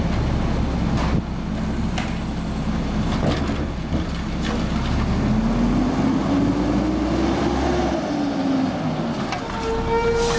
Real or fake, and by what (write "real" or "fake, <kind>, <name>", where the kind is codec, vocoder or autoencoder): real